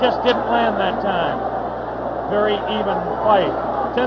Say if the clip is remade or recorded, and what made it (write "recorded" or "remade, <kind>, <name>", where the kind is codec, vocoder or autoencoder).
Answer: recorded